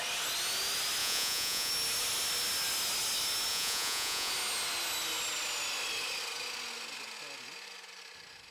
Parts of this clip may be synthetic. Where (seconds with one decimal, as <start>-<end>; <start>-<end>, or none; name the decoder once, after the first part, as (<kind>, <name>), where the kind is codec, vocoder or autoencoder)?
1.0-1.7 (vocoder, Vocos); 3.5-4.3